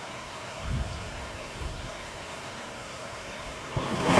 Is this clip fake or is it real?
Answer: fake